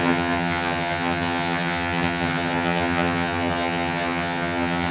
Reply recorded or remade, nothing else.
remade